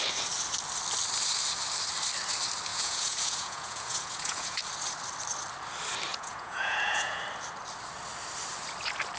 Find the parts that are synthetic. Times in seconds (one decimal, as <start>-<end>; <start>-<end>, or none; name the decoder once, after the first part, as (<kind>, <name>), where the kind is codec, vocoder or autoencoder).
2.7-4.6 (vocoder, Vocos); 6.1-7.2